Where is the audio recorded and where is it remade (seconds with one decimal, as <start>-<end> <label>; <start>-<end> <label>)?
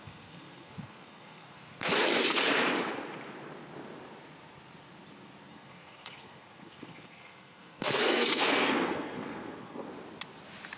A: 0.0-1.9 remade; 1.9-5.5 recorded; 5.5-9.9 remade; 9.9-10.8 recorded